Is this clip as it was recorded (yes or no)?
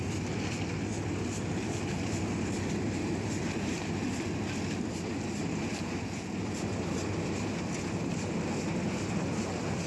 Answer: yes